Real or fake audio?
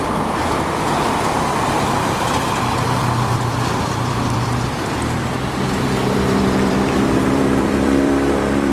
fake